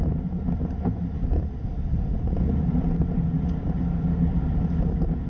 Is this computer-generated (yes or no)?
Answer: no